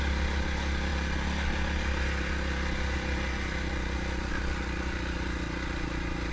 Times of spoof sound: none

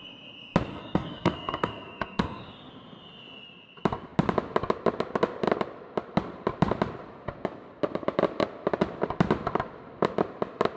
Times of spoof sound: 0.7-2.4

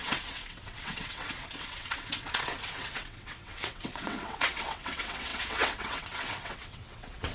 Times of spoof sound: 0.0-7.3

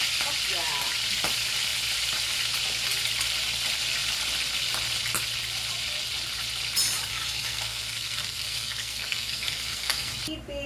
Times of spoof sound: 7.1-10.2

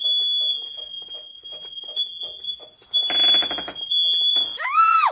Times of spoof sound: 4.3-5.1

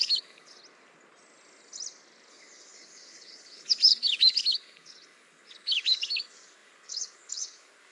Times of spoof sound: 0.0-0.6; 2.3-7.9